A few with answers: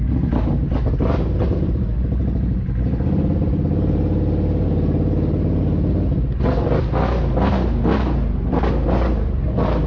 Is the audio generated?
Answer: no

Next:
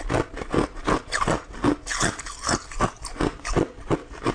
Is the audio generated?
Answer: no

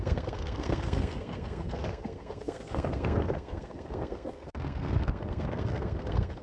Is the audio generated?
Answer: yes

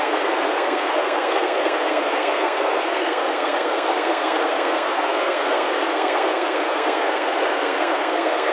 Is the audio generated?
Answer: yes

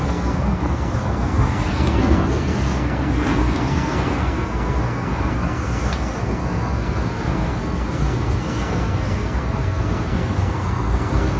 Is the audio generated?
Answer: yes